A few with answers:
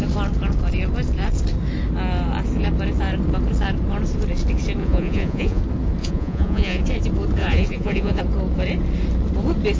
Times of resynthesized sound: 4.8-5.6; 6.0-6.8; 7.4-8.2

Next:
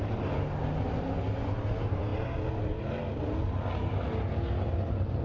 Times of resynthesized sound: none

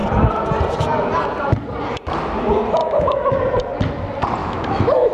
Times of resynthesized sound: 2.8-3.4; 4.4-5.1

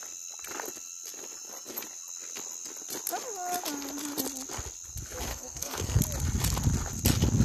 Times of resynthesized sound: 5.3-6.0

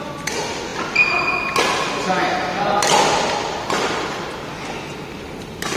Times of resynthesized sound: none

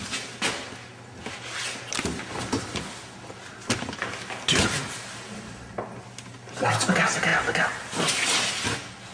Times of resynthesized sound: none

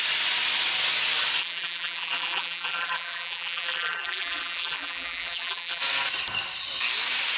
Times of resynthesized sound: 1.4-5.8